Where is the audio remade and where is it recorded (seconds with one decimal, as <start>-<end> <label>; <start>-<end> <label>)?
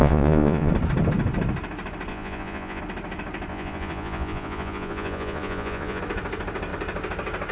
0.0-0.7 remade; 0.7-2.1 recorded; 2.1-2.8 remade; 2.8-3.5 recorded; 3.5-6.0 remade; 6.0-7.5 recorded